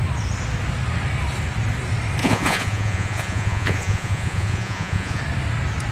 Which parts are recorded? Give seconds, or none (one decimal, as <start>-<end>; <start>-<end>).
0.0-2.2; 5.2-5.9